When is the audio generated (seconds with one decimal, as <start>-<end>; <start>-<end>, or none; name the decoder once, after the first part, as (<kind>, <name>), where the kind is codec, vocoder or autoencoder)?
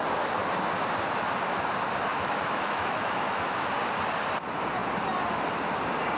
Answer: 2.1-3.7 (autoencoder, DAC-VAE)